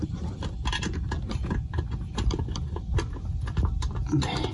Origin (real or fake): real